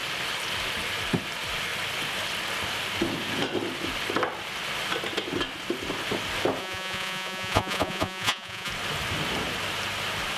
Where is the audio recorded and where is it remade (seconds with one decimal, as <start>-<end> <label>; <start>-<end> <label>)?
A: 0.0-6.6 recorded; 6.6-8.7 remade; 8.7-10.4 recorded